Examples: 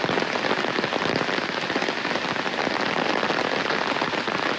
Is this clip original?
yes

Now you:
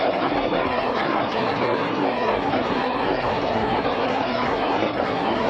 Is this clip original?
no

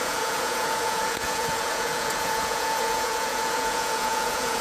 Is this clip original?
no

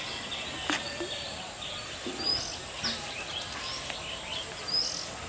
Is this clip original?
yes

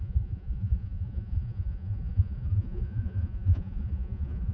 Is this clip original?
no